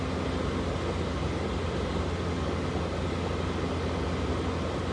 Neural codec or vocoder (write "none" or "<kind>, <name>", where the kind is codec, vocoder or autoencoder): none